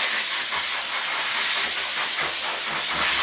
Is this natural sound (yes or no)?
yes